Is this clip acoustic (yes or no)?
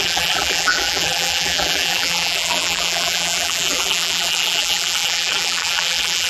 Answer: no